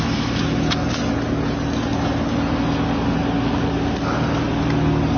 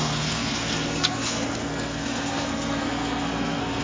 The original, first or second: first